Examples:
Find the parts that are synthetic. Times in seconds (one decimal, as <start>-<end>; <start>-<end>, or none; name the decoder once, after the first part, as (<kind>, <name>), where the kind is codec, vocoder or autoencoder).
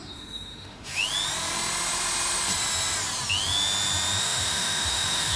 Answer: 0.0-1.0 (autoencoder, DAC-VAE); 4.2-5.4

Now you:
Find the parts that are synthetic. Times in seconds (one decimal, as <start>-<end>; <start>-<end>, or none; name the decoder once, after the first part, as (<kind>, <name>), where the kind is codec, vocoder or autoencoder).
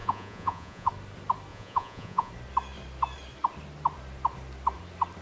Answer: 0.0-0.9 (vocoder, Vocos); 1.5-2.3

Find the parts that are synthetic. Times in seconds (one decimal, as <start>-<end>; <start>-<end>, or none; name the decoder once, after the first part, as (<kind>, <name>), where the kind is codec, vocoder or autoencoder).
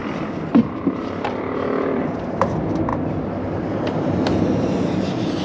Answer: none